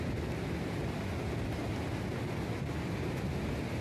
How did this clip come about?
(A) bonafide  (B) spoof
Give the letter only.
A